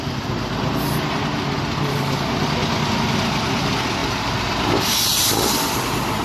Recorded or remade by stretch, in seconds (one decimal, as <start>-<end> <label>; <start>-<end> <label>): 0.0-6.2 recorded